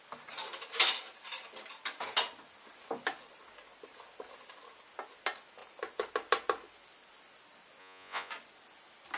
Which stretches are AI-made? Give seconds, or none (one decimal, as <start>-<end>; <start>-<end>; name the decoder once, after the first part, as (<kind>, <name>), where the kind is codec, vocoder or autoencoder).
7.8-8.3 (vocoder, Vocos)